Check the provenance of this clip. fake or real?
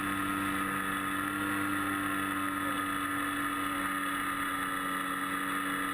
real